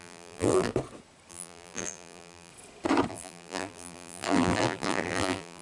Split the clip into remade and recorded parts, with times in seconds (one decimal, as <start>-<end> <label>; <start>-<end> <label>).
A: 0.0-0.7 remade; 0.7-1.3 recorded; 1.3-2.5 remade; 2.5-3.1 recorded; 3.1-5.6 remade